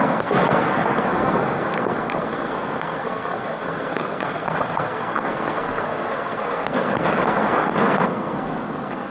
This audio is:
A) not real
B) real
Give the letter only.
A